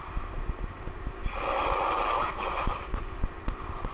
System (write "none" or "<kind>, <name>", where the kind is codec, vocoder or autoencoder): none